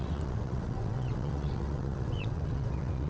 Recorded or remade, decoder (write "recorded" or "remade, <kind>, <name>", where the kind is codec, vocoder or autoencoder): remade, vocoder, WaveNeXt